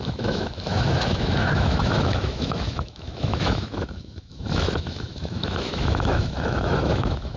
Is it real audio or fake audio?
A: fake